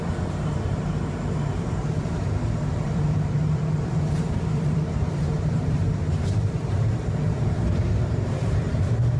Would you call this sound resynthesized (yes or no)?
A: yes